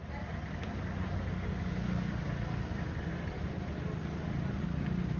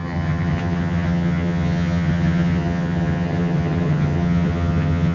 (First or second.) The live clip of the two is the first